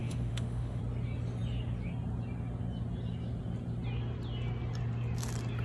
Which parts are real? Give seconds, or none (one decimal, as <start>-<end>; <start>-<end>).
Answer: 0.8-5.6